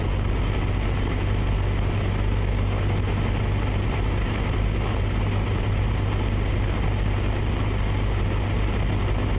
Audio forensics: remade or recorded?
recorded